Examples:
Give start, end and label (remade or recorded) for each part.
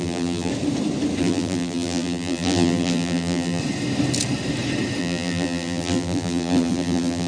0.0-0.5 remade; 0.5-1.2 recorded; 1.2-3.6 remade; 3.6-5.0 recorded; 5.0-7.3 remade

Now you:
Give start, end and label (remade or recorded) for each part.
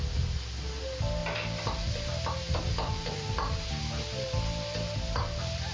0.0-5.7 recorded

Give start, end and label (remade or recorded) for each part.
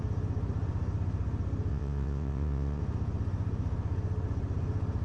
0.0-1.7 recorded; 1.7-2.8 remade; 2.8-5.0 recorded